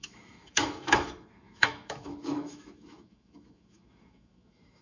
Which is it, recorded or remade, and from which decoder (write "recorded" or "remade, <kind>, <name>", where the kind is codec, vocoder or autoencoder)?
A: remade, autoencoder, DAC-VAE